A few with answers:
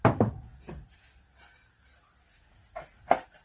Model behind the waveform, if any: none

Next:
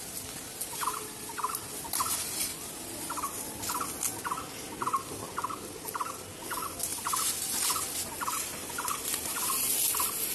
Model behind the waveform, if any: none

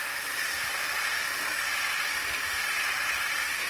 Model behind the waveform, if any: none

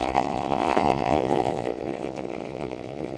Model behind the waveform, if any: vocoder, Vocos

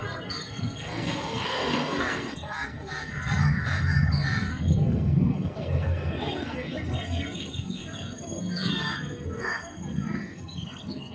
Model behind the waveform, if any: codec, SNAC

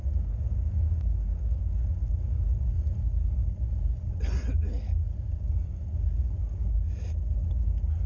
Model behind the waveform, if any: none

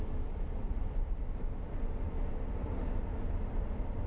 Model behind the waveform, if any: none